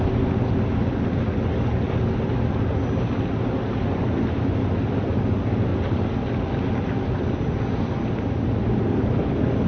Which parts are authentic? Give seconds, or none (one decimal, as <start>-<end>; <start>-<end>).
0.0-9.7